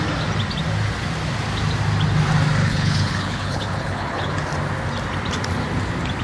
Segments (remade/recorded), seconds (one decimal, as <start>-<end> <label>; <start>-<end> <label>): 0.0-2.6 recorded; 2.6-4.3 remade; 4.3-6.2 recorded

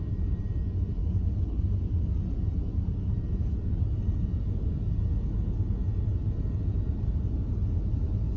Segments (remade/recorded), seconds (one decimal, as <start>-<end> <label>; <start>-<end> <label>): 0.0-1.0 recorded; 1.0-1.6 remade; 1.6-8.4 recorded